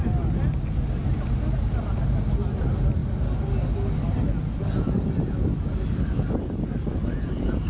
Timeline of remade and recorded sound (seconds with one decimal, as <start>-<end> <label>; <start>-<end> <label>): 0.0-7.7 recorded